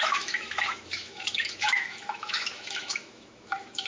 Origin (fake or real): fake